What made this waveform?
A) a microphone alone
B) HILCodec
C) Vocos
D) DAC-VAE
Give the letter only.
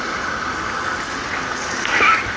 A